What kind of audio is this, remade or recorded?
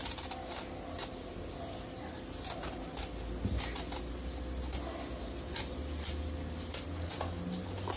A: recorded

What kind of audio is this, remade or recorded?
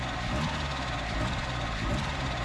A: recorded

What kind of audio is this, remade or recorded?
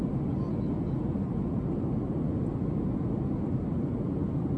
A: recorded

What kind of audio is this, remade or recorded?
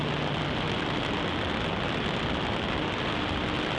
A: recorded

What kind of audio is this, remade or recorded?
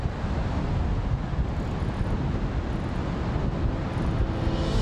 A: recorded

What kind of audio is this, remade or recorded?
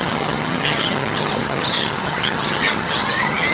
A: remade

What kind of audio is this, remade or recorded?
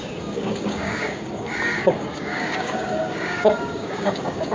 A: remade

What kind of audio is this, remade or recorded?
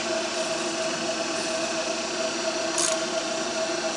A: recorded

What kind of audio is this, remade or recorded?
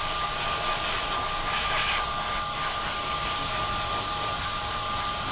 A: recorded